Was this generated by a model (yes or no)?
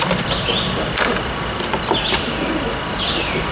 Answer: no